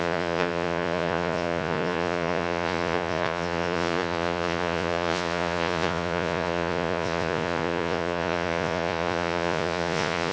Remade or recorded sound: remade